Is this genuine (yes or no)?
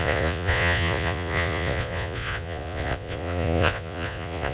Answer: no